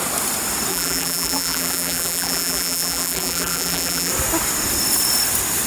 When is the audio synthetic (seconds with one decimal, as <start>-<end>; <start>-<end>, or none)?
0.7-4.1